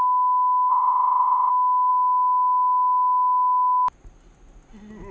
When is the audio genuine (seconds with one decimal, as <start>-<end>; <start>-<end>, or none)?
0.0-0.7; 1.5-5.1